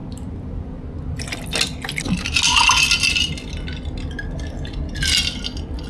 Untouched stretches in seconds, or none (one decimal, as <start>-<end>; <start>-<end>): 1.3-5.9